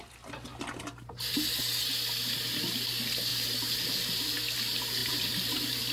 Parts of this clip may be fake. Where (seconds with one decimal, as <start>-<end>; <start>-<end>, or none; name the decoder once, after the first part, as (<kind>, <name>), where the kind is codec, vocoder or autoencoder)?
3.3-3.9 (vocoder, BigVGAN v2); 5.0-5.9